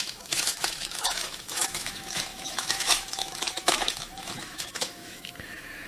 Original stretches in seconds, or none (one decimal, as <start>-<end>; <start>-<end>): none